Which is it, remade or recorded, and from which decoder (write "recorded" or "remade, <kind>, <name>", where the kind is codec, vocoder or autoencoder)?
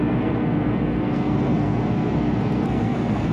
remade, codec, SNAC